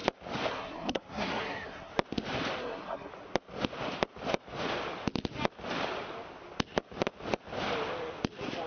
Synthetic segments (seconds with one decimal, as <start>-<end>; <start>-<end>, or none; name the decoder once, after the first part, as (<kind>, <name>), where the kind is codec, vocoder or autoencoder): 0.5-1.9 (codec, SNAC); 2.6-3.1